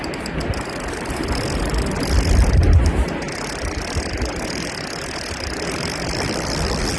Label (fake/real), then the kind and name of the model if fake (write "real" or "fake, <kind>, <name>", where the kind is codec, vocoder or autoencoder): real